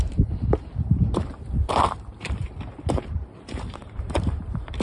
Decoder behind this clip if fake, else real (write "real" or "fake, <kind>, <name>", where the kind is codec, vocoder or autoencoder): fake, vocoder, BigVGAN v2